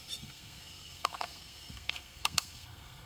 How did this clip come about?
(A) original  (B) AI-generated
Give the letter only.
B